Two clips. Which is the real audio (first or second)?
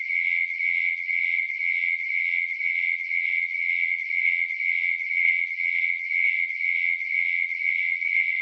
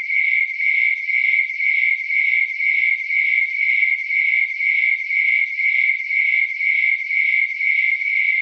second